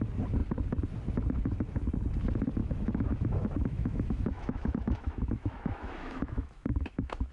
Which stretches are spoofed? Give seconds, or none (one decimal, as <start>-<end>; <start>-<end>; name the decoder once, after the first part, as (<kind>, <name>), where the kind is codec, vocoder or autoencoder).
2.6-7.3 (autoencoder, DAC-VAE)